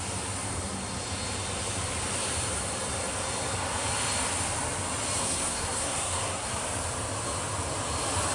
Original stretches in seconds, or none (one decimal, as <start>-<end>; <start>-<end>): 0.0-5.2; 6.5-8.3